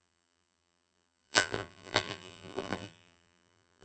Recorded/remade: remade